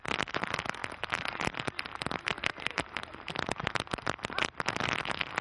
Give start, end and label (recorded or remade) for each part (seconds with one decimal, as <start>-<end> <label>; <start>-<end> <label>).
0.0-5.4 recorded